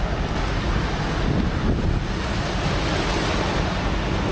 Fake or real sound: real